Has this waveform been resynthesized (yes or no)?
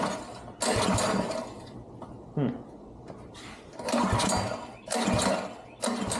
no